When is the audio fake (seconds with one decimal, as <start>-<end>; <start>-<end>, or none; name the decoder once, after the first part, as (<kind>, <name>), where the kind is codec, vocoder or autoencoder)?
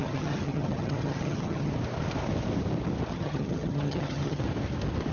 0.0-1.7 (vocoder, HiFi-GAN); 3.1-4.4